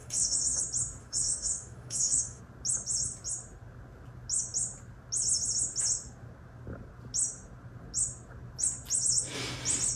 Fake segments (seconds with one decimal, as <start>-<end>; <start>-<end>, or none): 0.0-0.6; 1.0-2.4